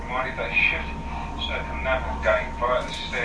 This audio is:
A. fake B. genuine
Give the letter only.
B